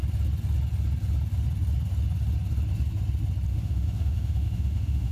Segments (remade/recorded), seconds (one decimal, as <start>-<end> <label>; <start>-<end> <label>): 0.0-3.5 recorded; 3.5-5.1 remade